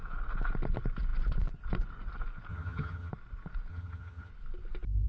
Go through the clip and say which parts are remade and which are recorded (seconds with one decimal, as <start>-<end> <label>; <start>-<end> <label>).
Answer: 0.0-2.5 recorded; 2.5-3.1 remade; 3.1-3.7 recorded; 3.7-4.3 remade; 4.3-5.1 recorded